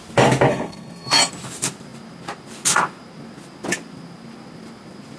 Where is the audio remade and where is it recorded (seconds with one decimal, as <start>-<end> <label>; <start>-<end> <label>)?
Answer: 0.0-0.5 recorded; 0.5-1.3 remade; 1.3-5.2 recorded